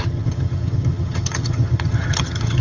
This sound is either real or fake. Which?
fake